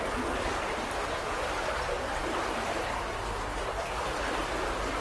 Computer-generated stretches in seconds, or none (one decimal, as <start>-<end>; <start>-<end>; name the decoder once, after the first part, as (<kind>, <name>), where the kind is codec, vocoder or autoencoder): none